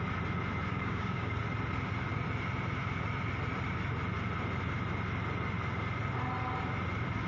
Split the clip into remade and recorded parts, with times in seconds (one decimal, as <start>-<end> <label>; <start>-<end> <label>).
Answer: 0.0-0.7 recorded; 0.7-1.4 remade; 1.4-7.3 recorded